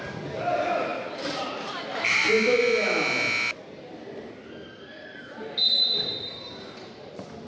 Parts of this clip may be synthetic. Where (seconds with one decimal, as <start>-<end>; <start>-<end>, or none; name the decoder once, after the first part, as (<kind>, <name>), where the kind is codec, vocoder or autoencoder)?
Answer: none